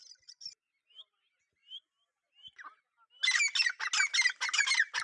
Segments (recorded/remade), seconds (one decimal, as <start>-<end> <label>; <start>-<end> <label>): 0.0-5.0 recorded